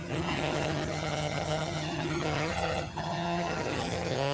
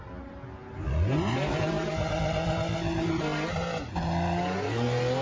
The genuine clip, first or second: second